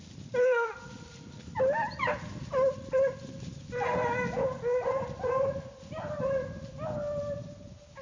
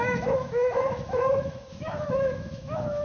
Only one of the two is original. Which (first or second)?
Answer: first